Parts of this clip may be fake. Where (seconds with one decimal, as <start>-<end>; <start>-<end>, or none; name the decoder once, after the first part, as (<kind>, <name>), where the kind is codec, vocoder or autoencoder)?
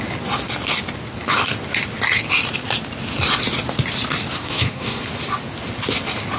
4.3-5.0 (codec, SNAC)